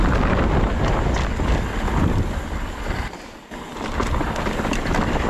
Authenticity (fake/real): real